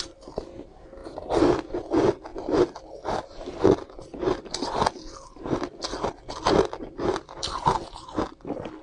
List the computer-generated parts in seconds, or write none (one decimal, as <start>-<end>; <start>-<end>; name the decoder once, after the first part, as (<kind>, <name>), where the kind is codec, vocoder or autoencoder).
none